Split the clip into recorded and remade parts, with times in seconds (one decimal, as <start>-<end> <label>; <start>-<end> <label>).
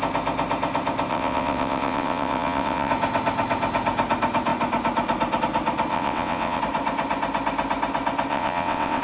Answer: 0.0-1.1 recorded; 1.1-2.9 remade; 2.9-5.9 recorded; 5.9-6.6 remade; 6.6-8.3 recorded; 8.3-9.0 remade